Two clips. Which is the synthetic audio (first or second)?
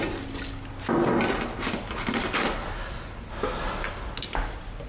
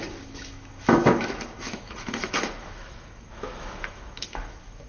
second